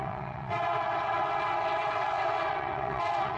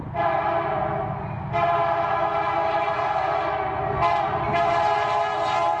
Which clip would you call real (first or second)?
second